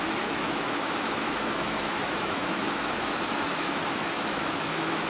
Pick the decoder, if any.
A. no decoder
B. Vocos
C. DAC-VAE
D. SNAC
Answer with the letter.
C